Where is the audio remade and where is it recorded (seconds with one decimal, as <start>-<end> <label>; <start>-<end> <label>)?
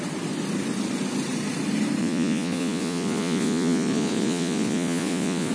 0.0-2.0 recorded; 2.0-5.5 remade